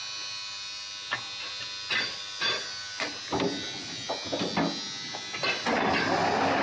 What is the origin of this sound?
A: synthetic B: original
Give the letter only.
B